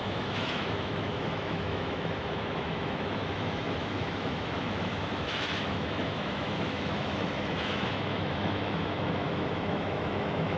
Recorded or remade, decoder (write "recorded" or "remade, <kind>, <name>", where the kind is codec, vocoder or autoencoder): remade, autoencoder, DAC-VAE